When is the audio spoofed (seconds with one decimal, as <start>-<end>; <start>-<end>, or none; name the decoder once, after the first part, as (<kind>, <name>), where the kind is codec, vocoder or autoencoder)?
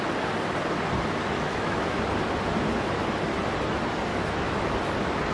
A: 1.2-2.0 (autoencoder, DAC-VAE); 4.1-4.7